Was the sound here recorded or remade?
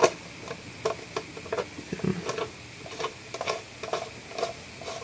recorded